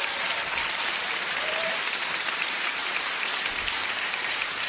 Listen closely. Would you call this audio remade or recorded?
remade